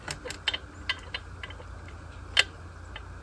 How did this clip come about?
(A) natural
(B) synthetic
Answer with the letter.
A